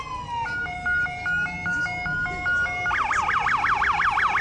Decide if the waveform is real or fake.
real